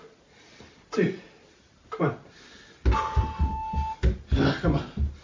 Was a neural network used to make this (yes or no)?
no